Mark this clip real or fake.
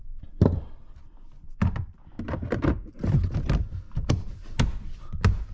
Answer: real